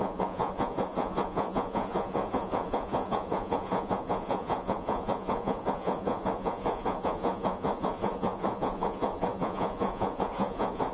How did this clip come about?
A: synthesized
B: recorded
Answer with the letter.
A